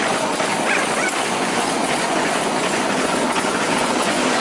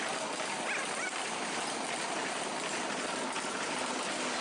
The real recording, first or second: second